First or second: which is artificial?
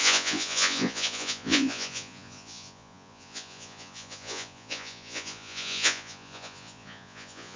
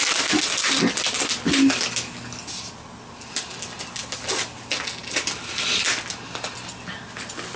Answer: first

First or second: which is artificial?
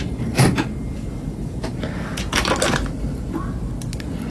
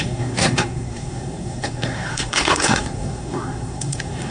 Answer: second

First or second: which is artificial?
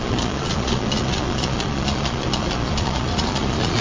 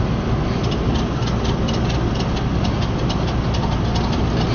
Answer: first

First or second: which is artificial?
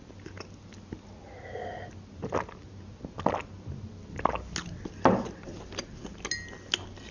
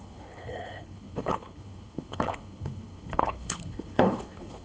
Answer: second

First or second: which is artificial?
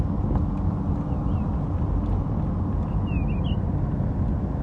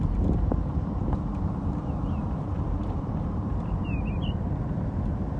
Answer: second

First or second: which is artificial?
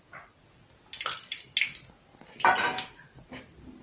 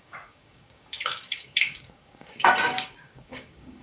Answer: second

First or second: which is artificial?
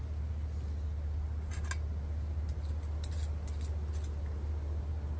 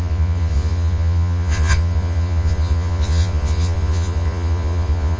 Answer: second